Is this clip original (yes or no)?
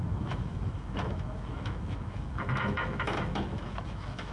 no